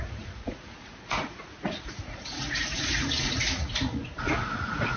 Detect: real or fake fake